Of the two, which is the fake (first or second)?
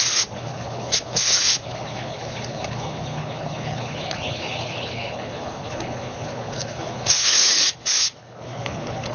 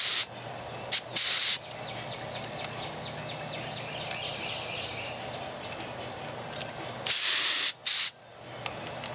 first